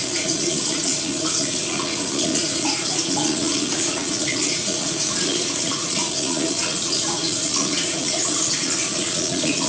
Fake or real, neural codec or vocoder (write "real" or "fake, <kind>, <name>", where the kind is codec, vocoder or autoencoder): fake, vocoder, Vocos